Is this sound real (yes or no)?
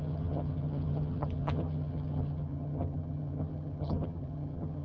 no